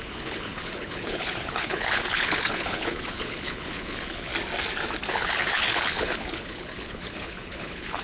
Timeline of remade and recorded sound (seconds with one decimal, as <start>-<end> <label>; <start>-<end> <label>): 0.0-4.3 remade; 4.3-5.1 recorded; 5.1-8.0 remade